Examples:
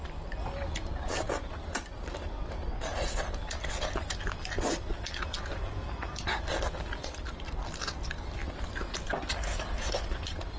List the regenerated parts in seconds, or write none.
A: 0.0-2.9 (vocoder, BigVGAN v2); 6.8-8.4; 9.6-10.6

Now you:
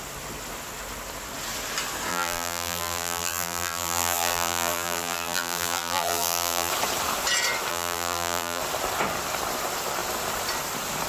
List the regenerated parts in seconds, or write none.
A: 2.1-6.7 (vocoder, BigVGAN v2); 7.7-8.6

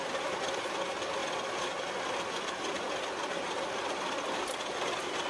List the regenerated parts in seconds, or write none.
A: none